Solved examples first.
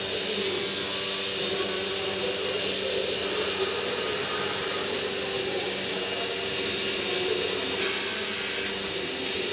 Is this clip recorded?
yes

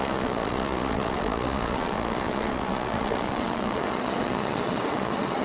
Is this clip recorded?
no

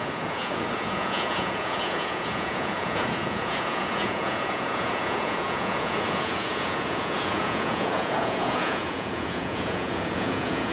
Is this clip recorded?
no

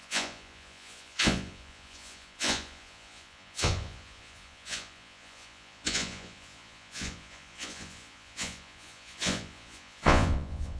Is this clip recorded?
no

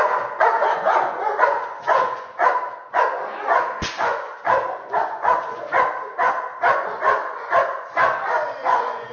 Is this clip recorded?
no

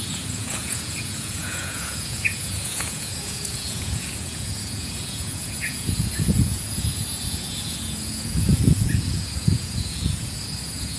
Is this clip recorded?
no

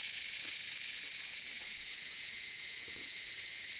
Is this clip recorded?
no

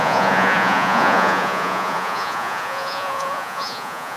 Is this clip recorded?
no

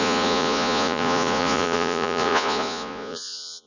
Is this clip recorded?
no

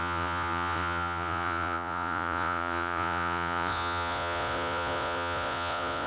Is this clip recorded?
no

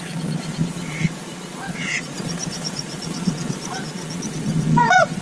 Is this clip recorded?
no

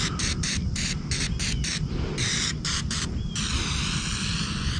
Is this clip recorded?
yes